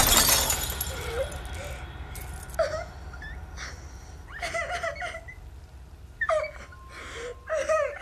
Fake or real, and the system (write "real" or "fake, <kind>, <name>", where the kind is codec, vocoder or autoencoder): real